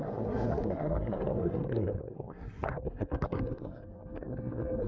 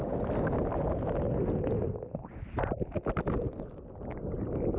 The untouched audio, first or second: second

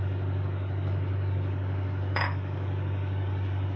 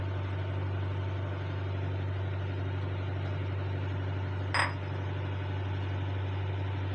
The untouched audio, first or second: second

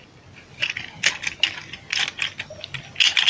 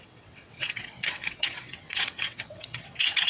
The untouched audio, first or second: first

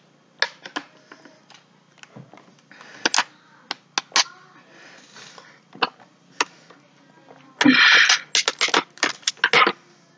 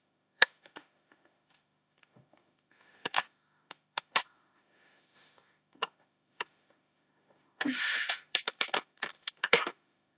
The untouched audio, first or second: first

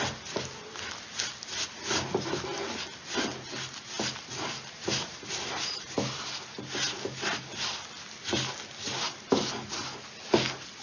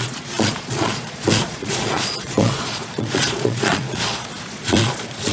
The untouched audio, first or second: first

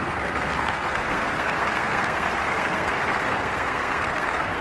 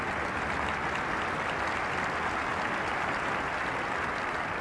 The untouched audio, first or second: second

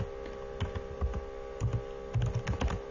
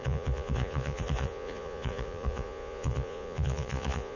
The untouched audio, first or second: first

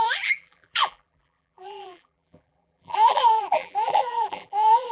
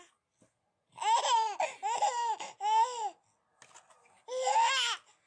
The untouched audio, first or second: second